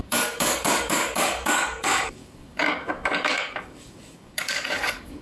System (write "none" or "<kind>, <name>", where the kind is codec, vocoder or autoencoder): codec, DAC